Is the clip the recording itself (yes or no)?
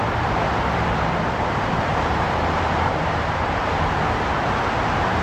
no